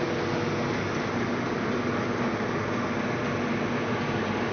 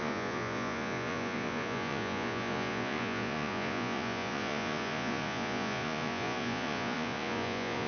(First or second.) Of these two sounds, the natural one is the first